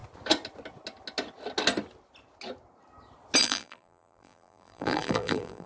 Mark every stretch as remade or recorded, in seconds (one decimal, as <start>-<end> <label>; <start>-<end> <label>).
0.0-3.4 recorded; 3.4-5.7 remade